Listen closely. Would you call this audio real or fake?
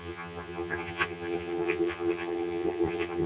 fake